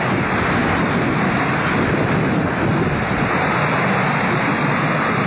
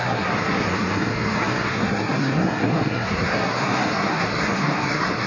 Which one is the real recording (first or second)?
first